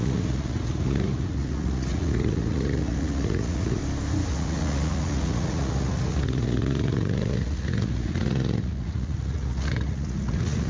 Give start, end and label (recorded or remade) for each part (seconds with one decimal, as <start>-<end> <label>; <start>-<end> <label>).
0.0-3.8 remade; 3.8-4.3 recorded; 4.3-10.7 remade